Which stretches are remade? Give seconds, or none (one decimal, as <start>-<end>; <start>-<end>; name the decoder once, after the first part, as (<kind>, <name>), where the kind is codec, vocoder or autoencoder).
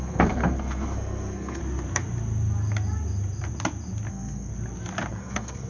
0.0-1.6 (codec, SNAC); 4.1-4.5; 5.1-5.7